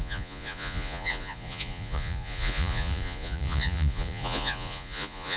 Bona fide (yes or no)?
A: no